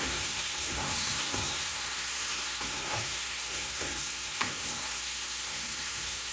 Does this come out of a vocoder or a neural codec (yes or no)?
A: yes